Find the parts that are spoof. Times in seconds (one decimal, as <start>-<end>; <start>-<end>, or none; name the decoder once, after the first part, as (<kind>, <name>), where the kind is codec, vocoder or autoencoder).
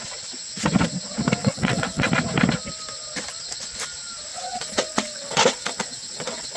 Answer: 1.4-2.1 (vocoder, WaveNeXt); 4.3-6.6